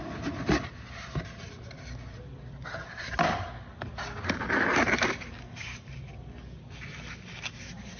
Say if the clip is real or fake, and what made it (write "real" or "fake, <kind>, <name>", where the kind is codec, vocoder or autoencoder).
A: real